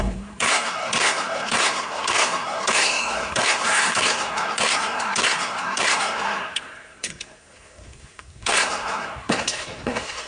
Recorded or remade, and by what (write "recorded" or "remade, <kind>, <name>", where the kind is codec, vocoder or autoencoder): remade, codec, SNAC